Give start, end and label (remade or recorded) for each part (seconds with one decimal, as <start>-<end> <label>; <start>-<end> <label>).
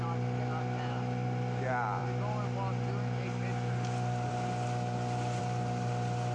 0.0-6.3 recorded